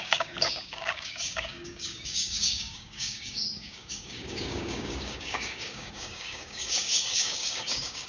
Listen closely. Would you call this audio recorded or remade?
remade